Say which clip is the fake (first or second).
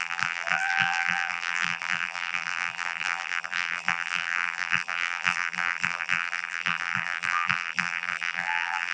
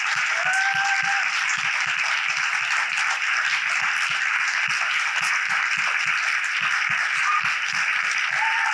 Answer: first